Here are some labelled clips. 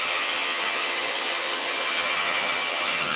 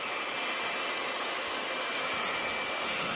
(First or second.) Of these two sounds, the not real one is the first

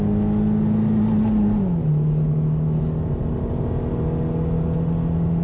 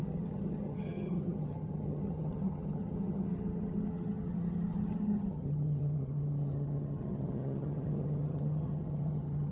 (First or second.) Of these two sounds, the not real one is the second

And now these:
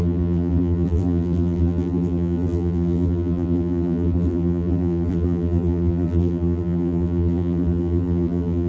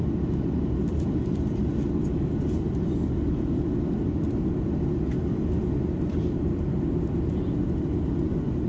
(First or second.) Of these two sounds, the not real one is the first